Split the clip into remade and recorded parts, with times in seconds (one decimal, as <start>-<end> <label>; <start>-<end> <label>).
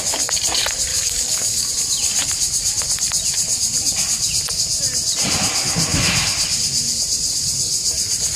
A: 0.0-0.9 recorded; 0.9-1.7 remade; 1.7-8.4 recorded